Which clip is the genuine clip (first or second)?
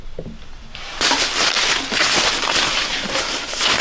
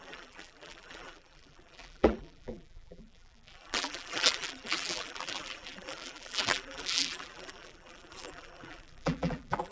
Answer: first